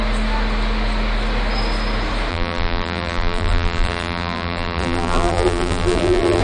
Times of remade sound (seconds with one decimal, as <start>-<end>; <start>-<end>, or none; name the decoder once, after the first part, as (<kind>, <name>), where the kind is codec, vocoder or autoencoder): 2.3-6.4 (vocoder, BigVGAN v2)